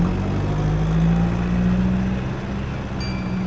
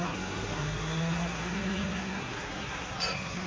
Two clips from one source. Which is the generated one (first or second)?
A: second